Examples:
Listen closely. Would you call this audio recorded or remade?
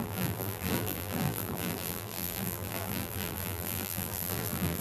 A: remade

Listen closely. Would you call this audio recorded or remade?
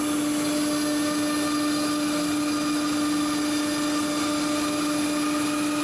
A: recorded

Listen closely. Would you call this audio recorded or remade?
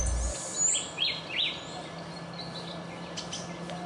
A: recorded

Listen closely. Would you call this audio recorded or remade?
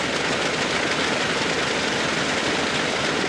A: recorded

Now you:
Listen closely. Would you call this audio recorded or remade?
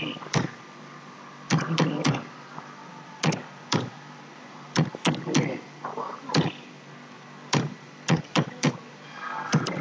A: remade